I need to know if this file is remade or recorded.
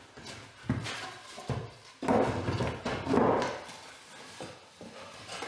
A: recorded